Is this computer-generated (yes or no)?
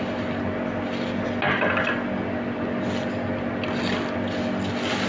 no